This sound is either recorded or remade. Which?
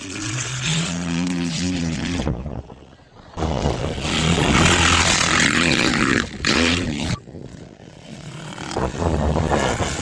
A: remade